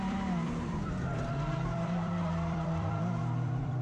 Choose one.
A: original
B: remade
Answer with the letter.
B